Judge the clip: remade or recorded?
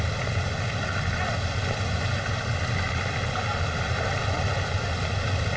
recorded